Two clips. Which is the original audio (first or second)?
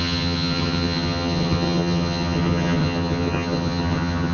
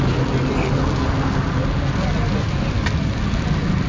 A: second